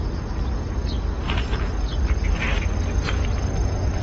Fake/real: real